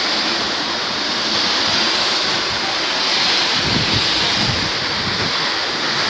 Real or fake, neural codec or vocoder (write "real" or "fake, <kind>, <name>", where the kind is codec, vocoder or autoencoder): real